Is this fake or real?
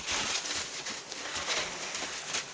real